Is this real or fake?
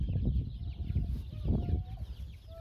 real